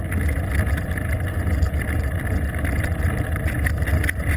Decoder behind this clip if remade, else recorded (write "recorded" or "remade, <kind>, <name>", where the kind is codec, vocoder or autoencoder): recorded